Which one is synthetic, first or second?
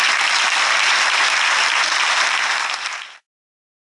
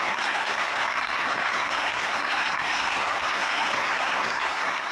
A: second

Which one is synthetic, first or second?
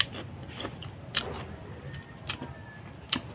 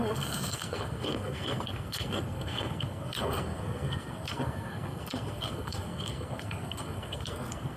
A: second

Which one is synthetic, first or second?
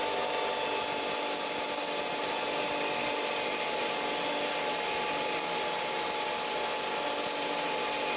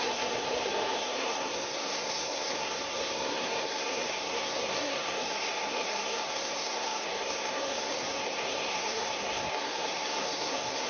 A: second